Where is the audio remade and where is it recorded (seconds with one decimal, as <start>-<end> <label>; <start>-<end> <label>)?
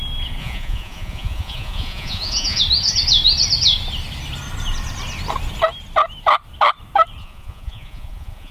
0.0-0.4 recorded; 0.4-2.6 remade; 2.6-7.2 recorded; 7.2-8.5 remade